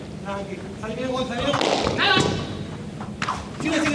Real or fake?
real